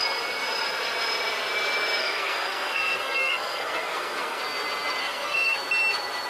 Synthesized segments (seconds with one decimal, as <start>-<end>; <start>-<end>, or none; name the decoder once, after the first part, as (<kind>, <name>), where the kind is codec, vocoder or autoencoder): 2.0-4.4 (codec, SNAC); 5.0-5.6